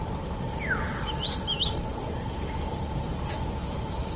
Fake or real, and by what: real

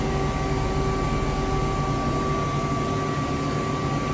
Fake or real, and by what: real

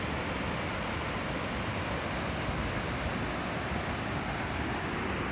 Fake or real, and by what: real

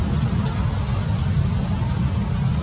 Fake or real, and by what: real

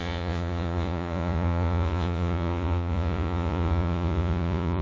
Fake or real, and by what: fake, vocoder, Vocos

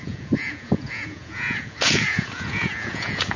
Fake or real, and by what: fake, vocoder, Vocos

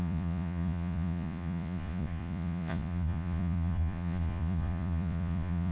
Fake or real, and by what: fake, vocoder, Vocos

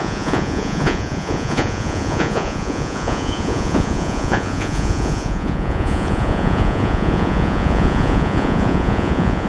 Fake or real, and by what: fake, vocoder, Vocos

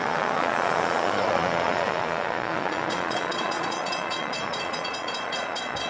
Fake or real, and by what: fake, vocoder, Vocos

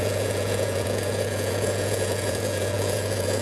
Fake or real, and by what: fake, vocoder, Vocos